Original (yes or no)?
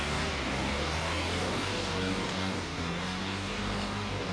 no